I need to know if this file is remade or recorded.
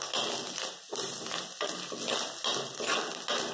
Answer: recorded